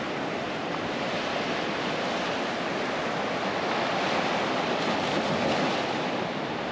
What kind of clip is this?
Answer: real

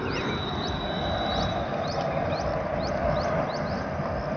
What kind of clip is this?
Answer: real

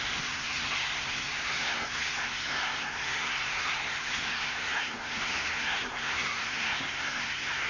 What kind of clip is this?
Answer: fake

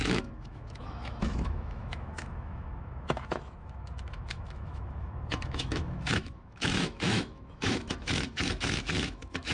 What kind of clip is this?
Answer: fake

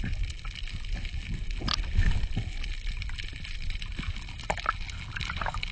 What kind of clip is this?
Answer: real